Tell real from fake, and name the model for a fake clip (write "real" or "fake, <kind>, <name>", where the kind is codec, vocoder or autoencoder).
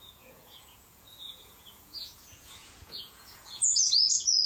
fake, vocoder, Vocos